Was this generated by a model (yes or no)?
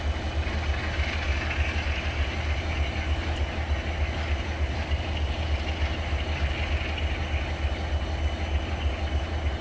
no